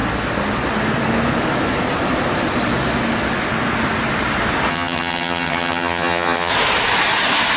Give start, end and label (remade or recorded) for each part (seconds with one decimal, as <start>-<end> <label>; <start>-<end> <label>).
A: 0.0-4.7 recorded; 4.7-6.5 remade; 6.5-7.6 recorded